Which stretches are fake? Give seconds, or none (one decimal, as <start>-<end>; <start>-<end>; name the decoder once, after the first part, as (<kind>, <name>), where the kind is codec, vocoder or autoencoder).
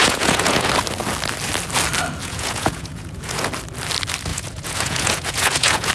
0.0-0.7 (vocoder, Vocos); 2.2-3.5; 4.3-5.9